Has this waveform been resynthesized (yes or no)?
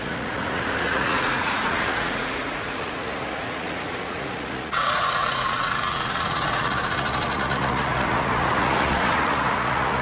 yes